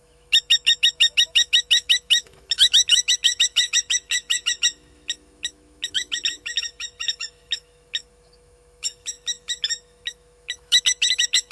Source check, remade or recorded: remade